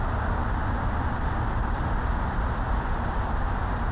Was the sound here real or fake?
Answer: fake